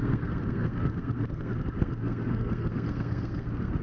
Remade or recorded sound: remade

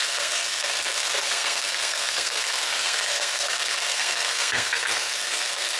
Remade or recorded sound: remade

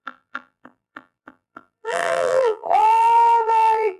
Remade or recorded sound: remade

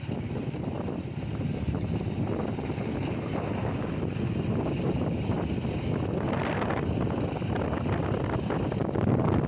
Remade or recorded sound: recorded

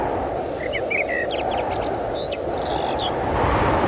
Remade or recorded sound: recorded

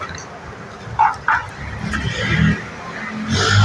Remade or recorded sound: recorded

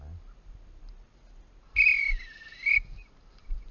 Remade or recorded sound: recorded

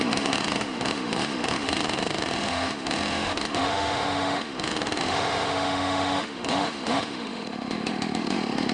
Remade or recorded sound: remade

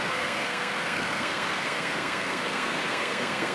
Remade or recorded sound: remade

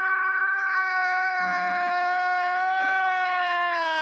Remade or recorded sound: remade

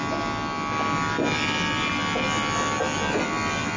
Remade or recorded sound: recorded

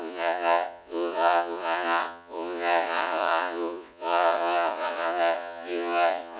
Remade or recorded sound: remade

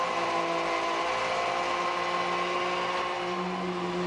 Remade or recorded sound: recorded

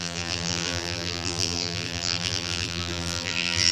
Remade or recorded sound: remade